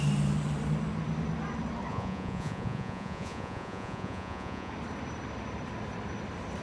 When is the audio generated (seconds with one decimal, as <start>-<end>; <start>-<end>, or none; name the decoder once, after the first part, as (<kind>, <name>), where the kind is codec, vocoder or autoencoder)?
1.9-4.7 (vocoder, Vocos)